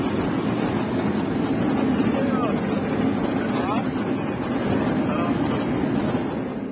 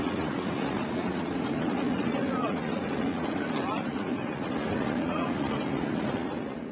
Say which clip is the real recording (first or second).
first